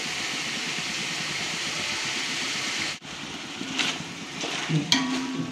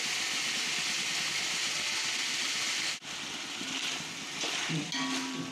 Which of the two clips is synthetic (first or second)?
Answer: first